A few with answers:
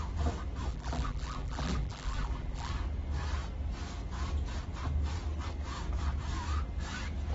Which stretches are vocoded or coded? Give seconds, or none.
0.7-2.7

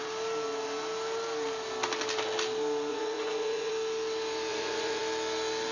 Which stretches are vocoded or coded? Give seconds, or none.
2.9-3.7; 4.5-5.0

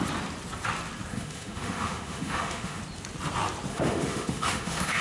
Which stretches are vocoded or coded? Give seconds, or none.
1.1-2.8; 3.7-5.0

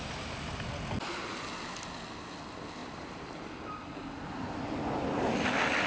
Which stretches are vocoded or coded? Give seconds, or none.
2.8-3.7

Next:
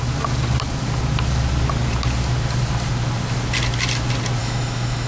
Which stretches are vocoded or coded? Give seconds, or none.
4.4-5.1

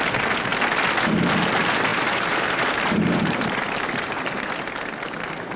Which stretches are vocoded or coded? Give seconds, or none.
1.9-4.7